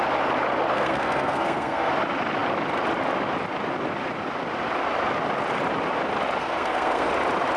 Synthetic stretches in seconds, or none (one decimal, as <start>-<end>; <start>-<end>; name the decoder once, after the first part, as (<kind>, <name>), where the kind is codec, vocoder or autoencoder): 0.7-1.9 (codec, SNAC); 6.4-7.1